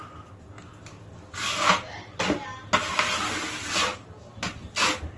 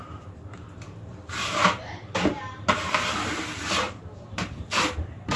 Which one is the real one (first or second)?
first